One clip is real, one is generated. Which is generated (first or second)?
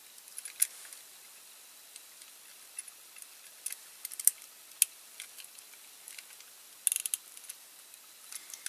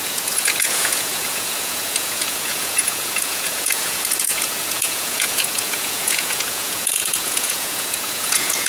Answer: second